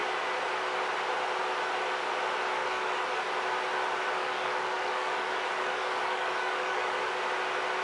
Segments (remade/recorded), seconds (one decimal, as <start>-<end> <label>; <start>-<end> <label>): 0.0-2.6 recorded; 2.6-3.2 remade; 3.2-4.2 recorded; 4.2-7.1 remade; 7.1-7.8 recorded